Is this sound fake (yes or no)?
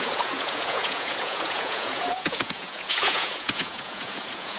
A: yes